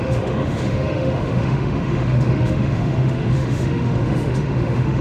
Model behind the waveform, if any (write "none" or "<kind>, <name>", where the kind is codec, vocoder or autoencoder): autoencoder, DAC-VAE